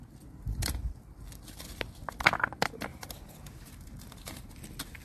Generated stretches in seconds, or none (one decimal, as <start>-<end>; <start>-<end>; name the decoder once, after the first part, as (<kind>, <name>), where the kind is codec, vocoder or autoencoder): 2.9-4.6 (vocoder, BigVGAN v2)